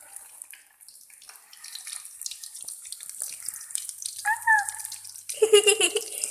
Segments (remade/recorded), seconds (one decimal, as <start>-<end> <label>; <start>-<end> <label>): 0.0-1.5 recorded; 1.5-5.1 remade; 5.1-6.3 recorded